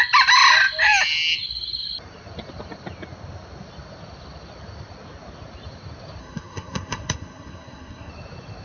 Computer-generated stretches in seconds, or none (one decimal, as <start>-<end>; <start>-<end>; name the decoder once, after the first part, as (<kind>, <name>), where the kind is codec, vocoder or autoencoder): 6.2-8.1 (codec, SNAC)